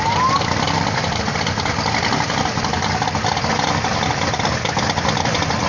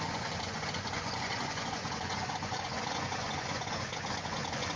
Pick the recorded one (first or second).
first